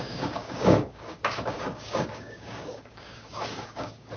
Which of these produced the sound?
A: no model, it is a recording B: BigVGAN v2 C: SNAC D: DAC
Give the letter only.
D